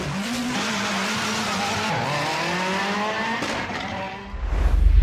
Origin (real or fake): real